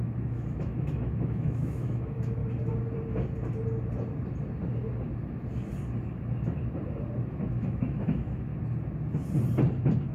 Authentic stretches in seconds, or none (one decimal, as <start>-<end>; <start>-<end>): 2.4-7.5; 8.5-10.1